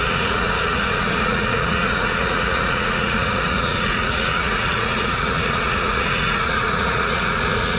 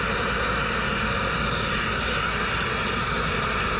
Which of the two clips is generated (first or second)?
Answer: first